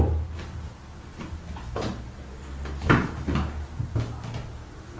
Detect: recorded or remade recorded